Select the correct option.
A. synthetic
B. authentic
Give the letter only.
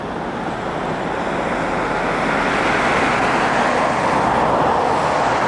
B